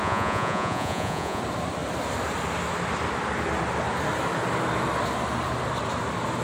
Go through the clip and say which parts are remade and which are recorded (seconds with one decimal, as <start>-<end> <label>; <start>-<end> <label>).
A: 0.0-1.4 remade; 1.4-6.4 recorded